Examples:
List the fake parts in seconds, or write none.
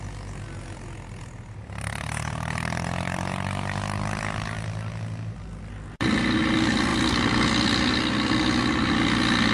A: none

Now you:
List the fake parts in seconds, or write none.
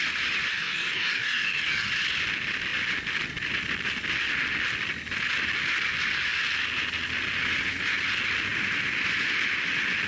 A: 0.5-1.9 (codec, DAC)